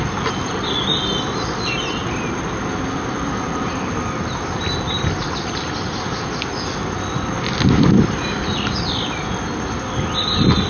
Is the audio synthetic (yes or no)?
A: no